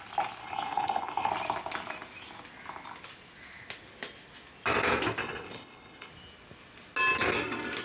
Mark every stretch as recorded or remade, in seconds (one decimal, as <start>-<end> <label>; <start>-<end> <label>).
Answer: 0.0-0.4 recorded; 0.4-1.3 remade; 1.3-5.2 recorded; 5.2-6.1 remade; 6.1-7.8 recorded